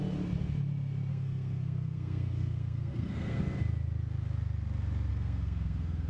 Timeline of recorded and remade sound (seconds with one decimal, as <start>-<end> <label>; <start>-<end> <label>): 0.0-1.1 recorded; 1.1-3.4 remade; 3.4-5.1 recorded; 5.1-6.1 remade